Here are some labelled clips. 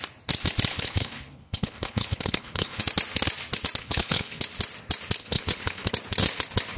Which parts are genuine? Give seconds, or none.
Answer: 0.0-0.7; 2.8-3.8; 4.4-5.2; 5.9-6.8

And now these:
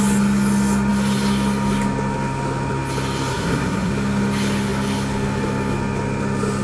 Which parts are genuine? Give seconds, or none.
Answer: 0.0-3.3; 3.9-6.6